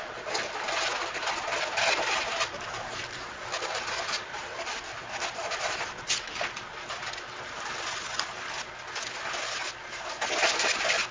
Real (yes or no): yes